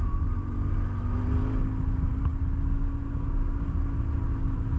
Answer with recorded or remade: recorded